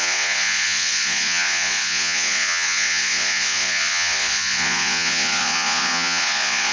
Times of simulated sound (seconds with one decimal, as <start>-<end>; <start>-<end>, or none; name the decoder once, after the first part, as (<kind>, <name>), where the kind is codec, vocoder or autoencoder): 0.0-6.7 (vocoder, Vocos)